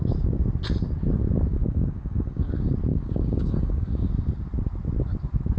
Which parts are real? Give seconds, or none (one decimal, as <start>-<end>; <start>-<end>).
0.0-1.5; 2.5-2.9; 4.1-5.6